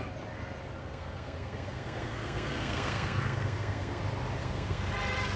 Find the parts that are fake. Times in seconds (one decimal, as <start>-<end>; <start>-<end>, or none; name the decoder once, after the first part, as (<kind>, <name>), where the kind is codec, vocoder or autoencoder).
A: 0.8-4.0 (codec, SNAC); 4.4-4.9